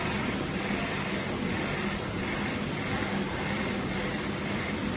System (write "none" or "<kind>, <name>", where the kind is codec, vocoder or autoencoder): none